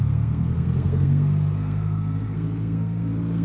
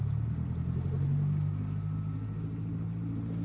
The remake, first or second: first